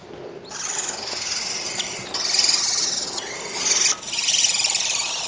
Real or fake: real